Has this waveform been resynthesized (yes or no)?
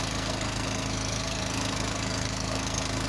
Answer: yes